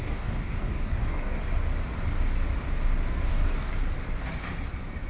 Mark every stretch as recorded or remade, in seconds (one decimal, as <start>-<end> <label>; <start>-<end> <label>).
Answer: 0.0-1.4 remade; 1.4-3.3 recorded; 3.3-3.7 remade; 3.7-5.1 recorded